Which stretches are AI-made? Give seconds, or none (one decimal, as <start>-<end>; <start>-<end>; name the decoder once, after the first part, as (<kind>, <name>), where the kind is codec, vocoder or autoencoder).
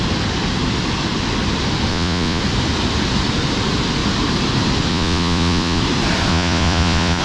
1.9-2.4 (vocoder, Vocos); 4.9-5.8; 6.3-7.2